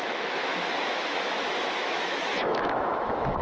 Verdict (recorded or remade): remade